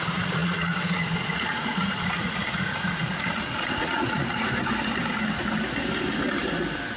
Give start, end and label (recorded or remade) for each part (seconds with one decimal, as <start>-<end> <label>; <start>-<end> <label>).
0.0-4.5 remade; 4.5-7.0 recorded